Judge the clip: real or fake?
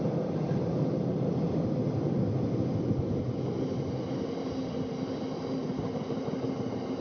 real